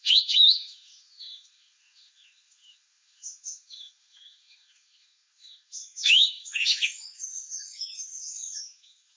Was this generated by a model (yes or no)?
yes